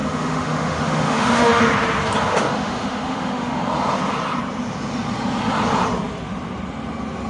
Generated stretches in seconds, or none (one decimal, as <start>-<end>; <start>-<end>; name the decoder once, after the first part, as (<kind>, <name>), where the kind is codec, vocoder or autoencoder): 0.0-1.6 (autoencoder, DAC-VAE); 2.3-3.6